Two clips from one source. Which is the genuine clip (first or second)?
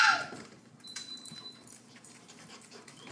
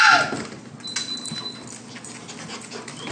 second